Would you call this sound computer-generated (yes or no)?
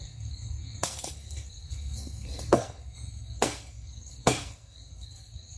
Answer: yes